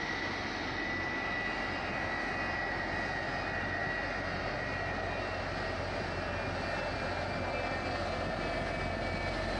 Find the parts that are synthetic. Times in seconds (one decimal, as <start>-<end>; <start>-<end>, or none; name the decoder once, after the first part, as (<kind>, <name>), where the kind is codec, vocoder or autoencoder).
none